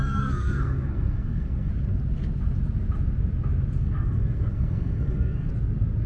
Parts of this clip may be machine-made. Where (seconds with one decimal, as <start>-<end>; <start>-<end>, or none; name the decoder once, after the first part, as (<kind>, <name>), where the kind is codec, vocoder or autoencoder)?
0.0-1.7 (codec, SNAC); 3.8-5.5